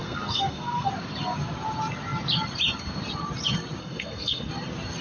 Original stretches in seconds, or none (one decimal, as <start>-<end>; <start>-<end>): 0.9-3.8; 4.5-5.0